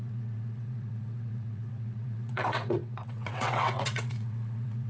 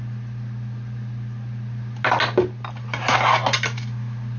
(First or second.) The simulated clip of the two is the first